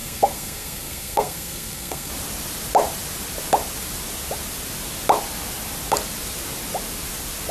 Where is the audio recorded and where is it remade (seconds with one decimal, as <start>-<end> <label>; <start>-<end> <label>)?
0.0-2.1 remade; 2.1-7.5 recorded